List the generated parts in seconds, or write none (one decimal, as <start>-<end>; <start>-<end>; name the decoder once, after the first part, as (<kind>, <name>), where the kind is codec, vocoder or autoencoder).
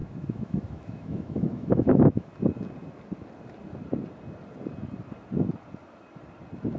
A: 0.0-2.3 (autoencoder, DAC-VAE)